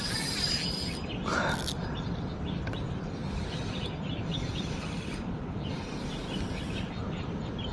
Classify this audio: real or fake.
real